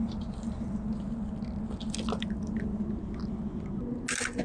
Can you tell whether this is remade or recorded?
recorded